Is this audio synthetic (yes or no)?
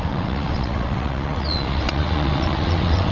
yes